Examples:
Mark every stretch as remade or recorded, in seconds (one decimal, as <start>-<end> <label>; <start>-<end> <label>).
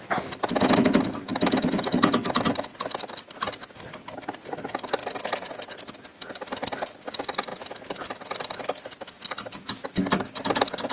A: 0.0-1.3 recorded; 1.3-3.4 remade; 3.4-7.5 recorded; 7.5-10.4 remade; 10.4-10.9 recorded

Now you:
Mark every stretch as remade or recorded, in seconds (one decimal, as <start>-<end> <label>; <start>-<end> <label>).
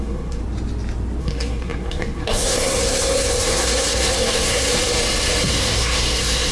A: 0.0-0.4 remade; 0.4-1.2 recorded; 1.2-4.7 remade; 4.7-5.5 recorded; 5.5-6.5 remade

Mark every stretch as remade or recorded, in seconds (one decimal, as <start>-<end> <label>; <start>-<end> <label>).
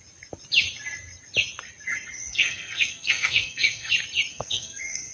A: 0.0-2.3 recorded; 2.3-3.9 remade; 3.9-4.3 recorded; 4.3-5.1 remade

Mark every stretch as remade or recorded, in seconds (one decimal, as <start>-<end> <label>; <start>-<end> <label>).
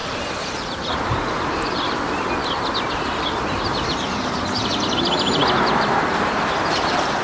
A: 0.0-7.2 recorded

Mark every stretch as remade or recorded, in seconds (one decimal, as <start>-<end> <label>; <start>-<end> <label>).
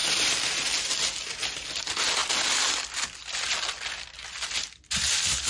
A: 0.0-5.5 recorded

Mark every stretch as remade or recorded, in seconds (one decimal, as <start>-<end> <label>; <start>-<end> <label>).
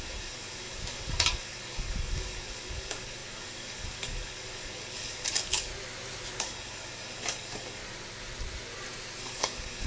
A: 0.0-5.7 remade; 5.7-6.4 recorded; 6.4-7.8 remade; 7.8-9.2 recorded; 9.2-9.9 remade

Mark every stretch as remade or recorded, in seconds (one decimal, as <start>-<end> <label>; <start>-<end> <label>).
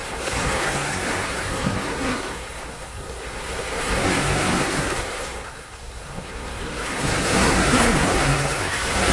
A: 0.0-9.1 remade